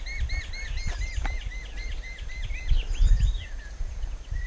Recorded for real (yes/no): yes